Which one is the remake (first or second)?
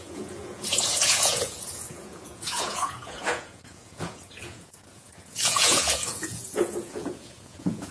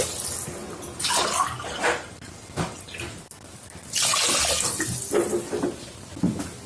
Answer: first